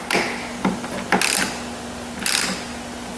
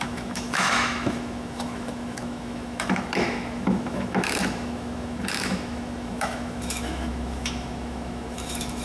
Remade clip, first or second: second